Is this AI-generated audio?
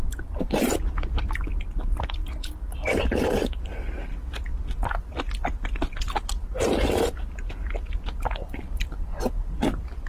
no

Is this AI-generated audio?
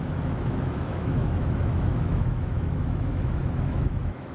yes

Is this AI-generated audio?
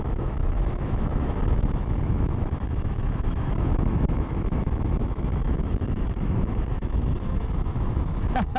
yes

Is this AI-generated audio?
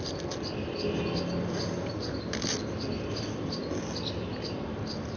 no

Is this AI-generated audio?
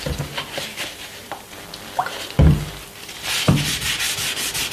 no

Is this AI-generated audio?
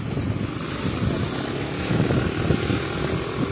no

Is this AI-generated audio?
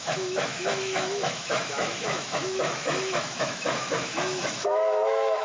yes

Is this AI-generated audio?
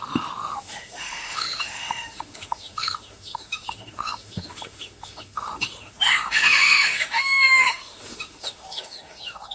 yes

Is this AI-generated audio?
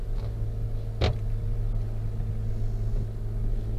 no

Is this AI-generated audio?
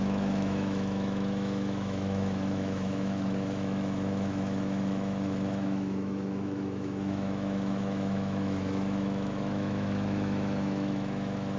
yes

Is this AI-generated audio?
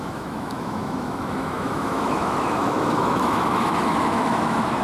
yes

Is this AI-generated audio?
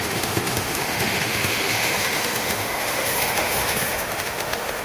yes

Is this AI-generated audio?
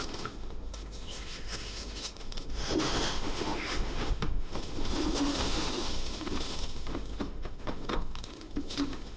yes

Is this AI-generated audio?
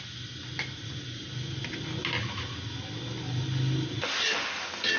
no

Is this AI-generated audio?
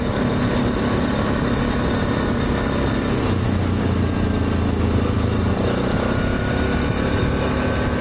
no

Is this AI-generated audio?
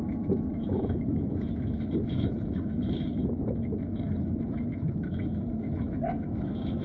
yes